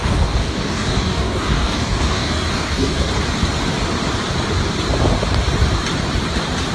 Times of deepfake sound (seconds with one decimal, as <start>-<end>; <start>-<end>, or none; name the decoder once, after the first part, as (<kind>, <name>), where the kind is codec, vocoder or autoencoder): 0.0-3.1 (codec, DAC)